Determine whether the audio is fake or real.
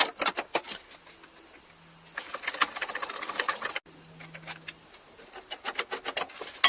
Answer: real